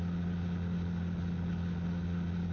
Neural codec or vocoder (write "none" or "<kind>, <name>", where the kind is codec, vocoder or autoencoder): none